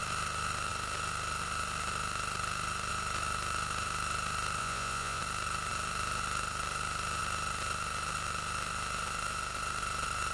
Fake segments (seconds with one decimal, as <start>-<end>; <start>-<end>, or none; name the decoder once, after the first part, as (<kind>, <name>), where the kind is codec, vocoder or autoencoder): 4.6-5.2 (vocoder, Vocos)